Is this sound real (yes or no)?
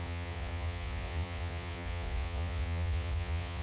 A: no